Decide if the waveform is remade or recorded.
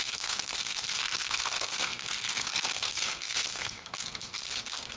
remade